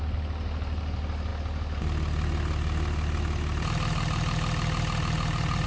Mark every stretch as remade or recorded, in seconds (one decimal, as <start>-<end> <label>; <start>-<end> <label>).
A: 0.0-5.7 recorded